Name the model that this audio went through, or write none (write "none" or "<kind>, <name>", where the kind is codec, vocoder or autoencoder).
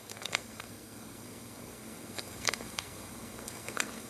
codec, SNAC